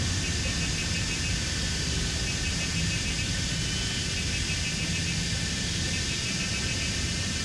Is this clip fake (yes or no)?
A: no